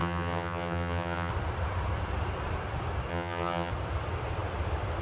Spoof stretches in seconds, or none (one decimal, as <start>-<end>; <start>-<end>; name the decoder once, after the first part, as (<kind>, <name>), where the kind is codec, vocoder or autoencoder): 0.0-1.3 (vocoder, HiFi-GAN); 3.1-3.7